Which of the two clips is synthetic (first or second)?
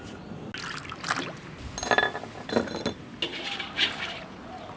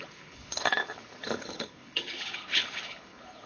second